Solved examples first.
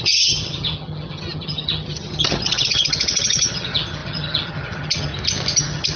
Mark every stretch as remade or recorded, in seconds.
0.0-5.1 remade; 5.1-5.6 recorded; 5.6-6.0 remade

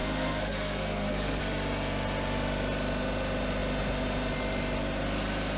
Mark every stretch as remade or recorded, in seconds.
0.0-1.4 remade; 1.4-5.6 recorded